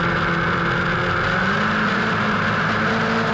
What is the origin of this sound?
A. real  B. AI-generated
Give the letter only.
A